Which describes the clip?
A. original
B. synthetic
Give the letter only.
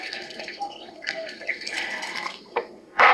B